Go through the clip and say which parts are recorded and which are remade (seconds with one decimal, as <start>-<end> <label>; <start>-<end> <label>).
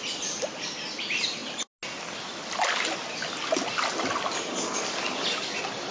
0.0-5.9 recorded